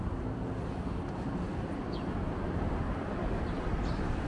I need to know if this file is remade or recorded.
remade